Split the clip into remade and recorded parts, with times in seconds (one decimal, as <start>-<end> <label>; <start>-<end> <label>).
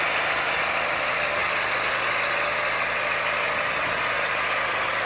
0.0-5.1 recorded